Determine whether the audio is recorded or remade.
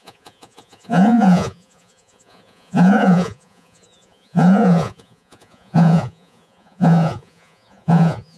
remade